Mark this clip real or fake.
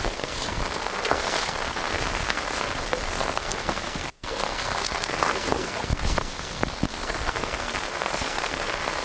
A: fake